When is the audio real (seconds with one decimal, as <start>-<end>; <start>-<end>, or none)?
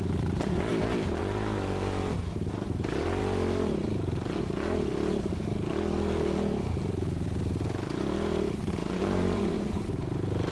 0.0-8.8; 9.9-10.5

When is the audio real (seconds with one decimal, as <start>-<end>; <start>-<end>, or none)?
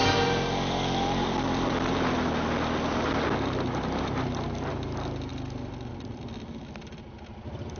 0.0-7.8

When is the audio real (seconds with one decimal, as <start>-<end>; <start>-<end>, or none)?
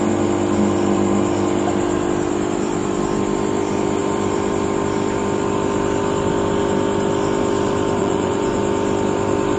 0.0-8.0; 8.6-9.6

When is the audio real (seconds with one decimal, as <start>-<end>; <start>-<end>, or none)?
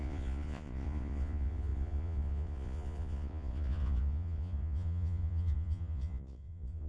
none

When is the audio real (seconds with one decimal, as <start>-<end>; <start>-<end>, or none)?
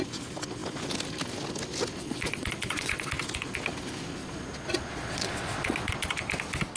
0.0-2.0; 3.1-4.2; 5.9-6.8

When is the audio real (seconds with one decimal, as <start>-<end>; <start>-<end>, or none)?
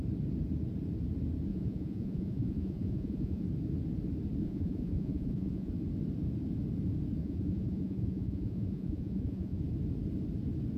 0.0-1.5; 3.4-4.4; 5.7-7.2; 9.6-10.8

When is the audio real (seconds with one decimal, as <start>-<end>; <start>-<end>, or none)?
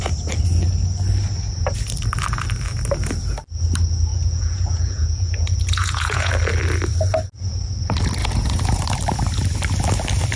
0.0-4.1; 6.3-8.2; 8.8-10.4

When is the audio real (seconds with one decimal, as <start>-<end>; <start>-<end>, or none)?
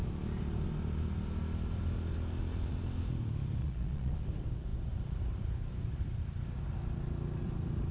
0.0-3.6; 4.2-7.9